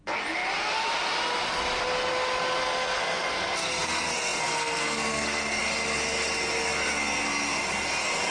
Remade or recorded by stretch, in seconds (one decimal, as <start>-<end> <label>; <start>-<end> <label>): 0.0-2.6 recorded; 2.6-5.6 remade; 5.6-8.3 recorded